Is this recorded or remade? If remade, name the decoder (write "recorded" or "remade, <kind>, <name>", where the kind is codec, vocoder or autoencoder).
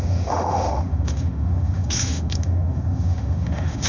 remade, autoencoder, DAC-VAE